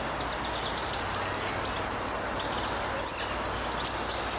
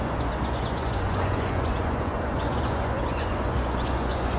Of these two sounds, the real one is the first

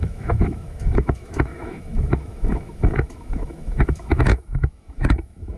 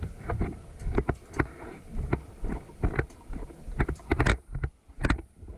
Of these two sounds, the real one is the second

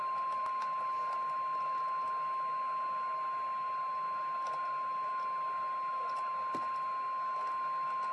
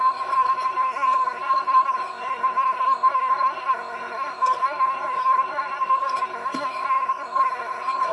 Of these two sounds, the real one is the first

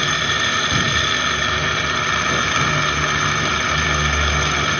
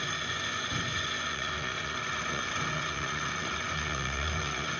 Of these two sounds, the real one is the first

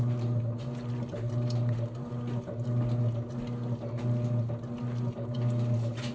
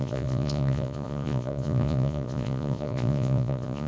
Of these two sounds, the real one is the first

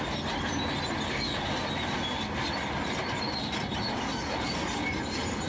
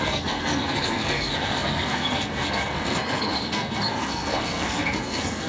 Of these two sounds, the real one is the first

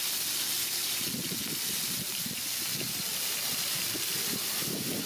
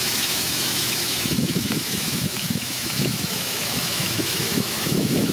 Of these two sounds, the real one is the first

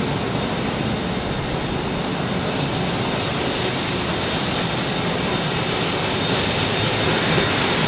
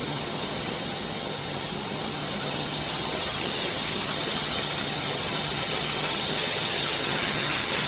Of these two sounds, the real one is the first